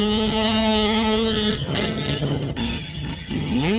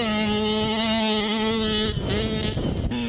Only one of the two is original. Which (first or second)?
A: second